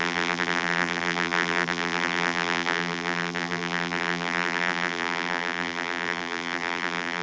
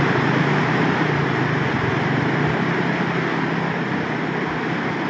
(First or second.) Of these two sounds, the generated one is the first